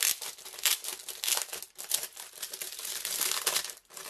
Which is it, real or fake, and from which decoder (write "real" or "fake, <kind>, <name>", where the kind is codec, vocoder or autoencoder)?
fake, vocoder, BigVGAN v2